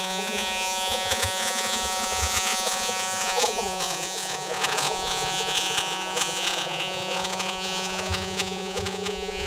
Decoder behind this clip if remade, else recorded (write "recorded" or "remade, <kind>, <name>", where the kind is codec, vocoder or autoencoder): remade, vocoder, Vocos